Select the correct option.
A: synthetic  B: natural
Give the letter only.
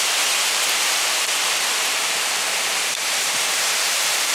A